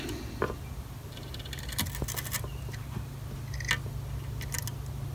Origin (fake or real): real